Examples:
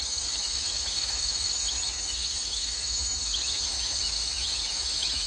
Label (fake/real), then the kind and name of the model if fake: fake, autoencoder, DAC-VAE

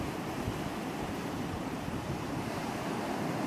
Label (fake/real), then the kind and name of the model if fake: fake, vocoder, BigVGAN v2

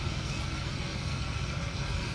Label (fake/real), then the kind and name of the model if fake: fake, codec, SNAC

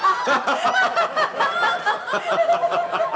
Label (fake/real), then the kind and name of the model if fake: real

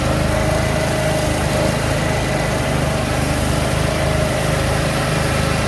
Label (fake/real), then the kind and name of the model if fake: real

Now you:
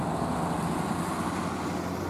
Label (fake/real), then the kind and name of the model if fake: real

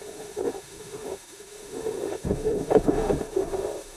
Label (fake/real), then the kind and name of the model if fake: fake, autoencoder, DAC-VAE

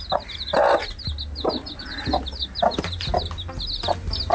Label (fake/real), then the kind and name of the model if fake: real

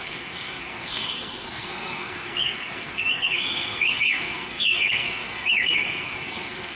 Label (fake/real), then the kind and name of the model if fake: fake, codec, SNAC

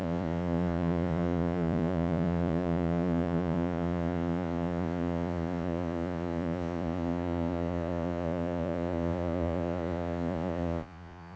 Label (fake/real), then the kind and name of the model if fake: fake, vocoder, Vocos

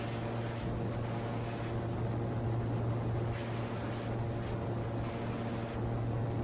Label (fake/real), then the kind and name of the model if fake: real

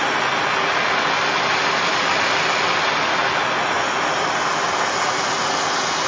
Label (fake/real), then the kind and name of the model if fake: real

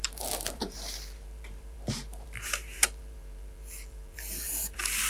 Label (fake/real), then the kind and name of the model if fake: fake, vocoder, BigVGAN v2